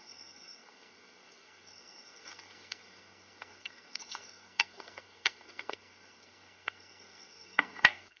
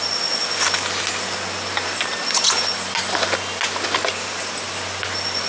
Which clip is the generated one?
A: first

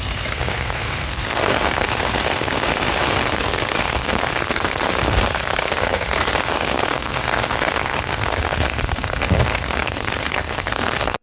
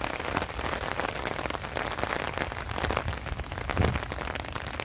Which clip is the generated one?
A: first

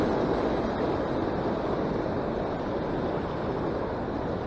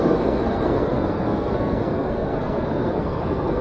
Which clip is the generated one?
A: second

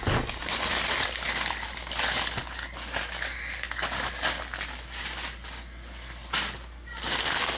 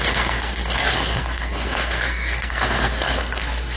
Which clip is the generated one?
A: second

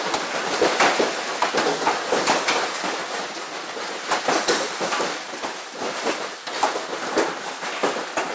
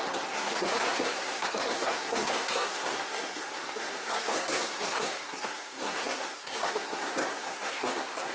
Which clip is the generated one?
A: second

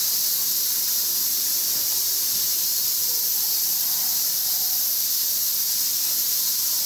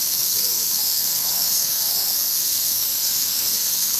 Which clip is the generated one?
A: second